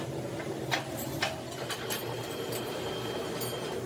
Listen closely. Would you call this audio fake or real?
real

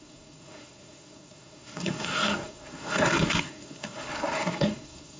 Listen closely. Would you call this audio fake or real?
fake